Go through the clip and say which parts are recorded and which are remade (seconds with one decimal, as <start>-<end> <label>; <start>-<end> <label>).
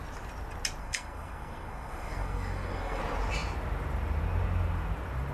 0.0-0.8 recorded; 0.8-3.0 remade; 3.0-5.3 recorded